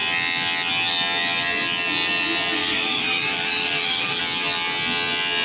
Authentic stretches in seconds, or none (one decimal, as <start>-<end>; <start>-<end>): 0.0-2.6; 4.2-5.4